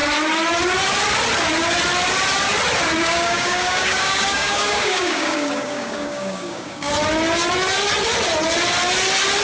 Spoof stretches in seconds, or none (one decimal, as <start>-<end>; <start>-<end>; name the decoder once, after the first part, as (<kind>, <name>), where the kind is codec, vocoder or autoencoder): 3.0-6.9 (codec, DAC)